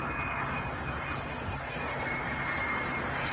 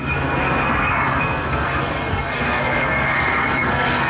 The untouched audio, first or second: first